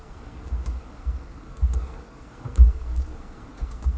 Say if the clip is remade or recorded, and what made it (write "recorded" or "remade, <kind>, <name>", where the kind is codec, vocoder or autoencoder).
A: remade, codec, SNAC